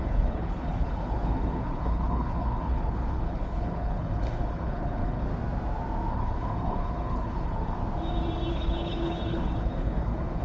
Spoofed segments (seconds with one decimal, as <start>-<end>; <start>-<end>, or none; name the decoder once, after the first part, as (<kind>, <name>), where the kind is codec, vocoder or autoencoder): 0.0-5.3 (codec, HILCodec); 6.1-7.8; 8.5-10.4